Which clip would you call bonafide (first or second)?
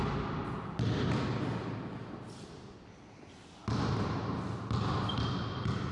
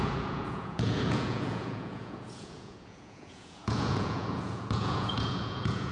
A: first